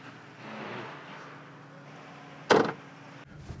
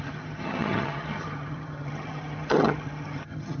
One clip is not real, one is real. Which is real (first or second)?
first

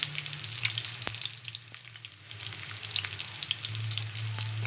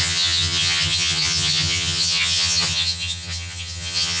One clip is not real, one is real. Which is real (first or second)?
first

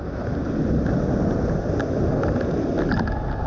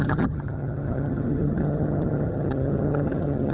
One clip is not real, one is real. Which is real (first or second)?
first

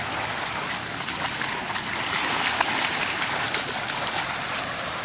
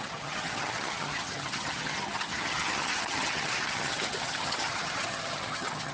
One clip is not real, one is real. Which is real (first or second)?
first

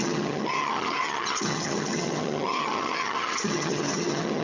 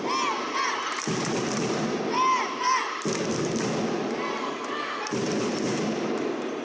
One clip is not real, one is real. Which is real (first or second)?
second